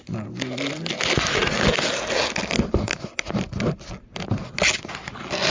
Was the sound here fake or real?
real